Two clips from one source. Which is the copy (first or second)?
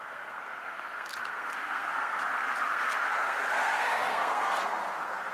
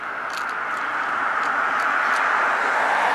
first